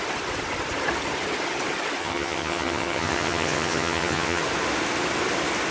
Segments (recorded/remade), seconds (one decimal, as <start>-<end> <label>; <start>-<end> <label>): 0.0-2.0 recorded; 2.0-4.4 remade; 4.4-5.7 recorded